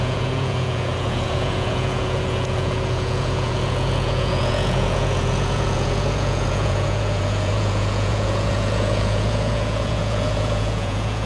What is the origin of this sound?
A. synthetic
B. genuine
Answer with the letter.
A